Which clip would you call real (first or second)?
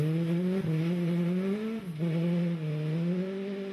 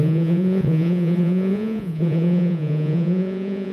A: first